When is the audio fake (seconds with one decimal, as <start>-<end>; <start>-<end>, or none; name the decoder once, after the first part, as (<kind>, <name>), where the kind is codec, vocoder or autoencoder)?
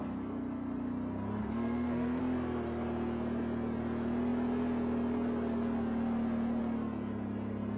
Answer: 1.4-2.2 (codec, SNAC)